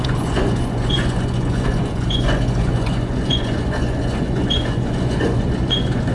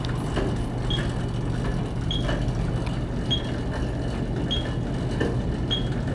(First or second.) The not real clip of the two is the first